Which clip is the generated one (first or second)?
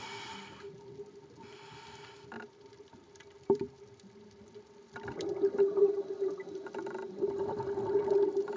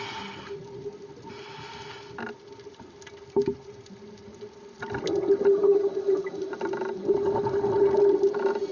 first